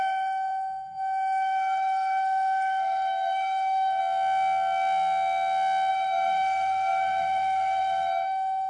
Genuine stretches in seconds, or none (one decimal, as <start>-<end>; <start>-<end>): 4.0-5.9